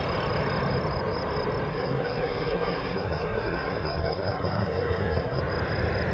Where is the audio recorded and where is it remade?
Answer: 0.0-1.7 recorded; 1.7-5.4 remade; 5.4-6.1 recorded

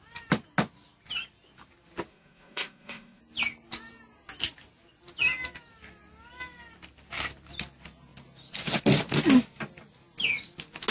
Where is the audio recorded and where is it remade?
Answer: 0.0-2.1 recorded; 2.1-3.2 remade; 3.2-10.9 recorded

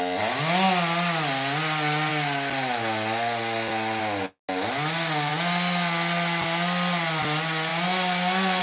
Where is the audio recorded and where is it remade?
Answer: 0.0-8.6 recorded

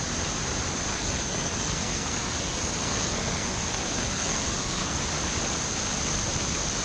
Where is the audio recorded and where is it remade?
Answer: 0.0-0.9 recorded; 0.9-5.0 remade; 5.0-6.8 recorded

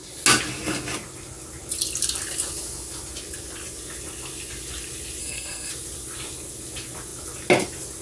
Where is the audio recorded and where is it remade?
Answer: 0.0-5.2 recorded; 5.2-5.7 remade; 5.7-8.0 recorded

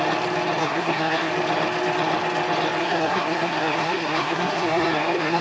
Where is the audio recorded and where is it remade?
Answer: 0.0-0.6 recorded; 0.6-1.3 remade; 1.3-2.8 recorded; 2.8-5.4 remade

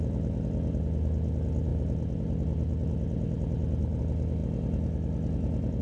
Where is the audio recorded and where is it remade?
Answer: 0.0-5.8 recorded